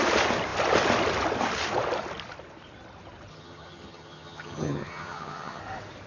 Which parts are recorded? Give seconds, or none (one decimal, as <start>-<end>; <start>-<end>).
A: 0.0-3.3; 5.6-6.1